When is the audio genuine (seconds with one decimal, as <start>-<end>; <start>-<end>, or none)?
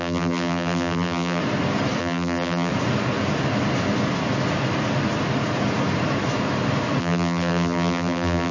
1.4-2.0; 2.7-7.0